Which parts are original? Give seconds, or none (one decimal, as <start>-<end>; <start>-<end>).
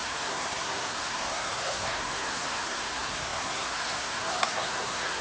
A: none